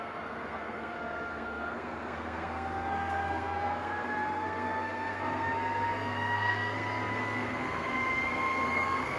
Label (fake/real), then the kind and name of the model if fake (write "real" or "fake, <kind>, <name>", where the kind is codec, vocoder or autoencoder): fake, codec, SNAC